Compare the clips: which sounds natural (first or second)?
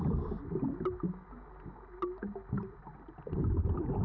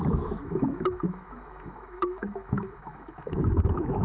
first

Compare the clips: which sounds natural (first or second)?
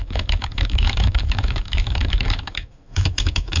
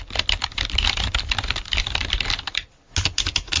second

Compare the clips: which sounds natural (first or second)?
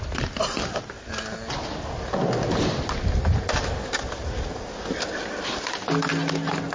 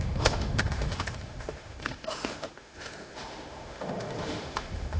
first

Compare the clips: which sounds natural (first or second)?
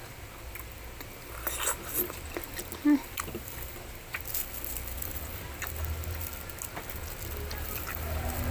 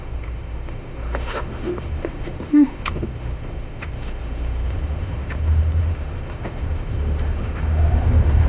first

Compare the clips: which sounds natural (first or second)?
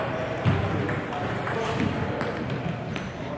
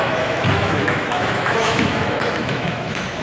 first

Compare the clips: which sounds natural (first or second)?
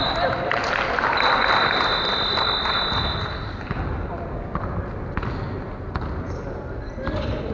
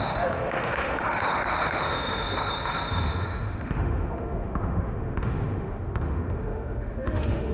first